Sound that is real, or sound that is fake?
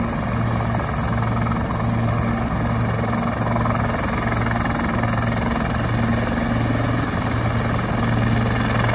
real